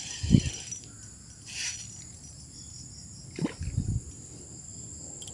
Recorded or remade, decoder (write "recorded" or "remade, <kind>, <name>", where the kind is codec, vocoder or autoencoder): recorded